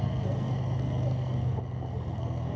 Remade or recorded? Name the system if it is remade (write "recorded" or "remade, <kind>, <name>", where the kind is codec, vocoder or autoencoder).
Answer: remade, codec, SNAC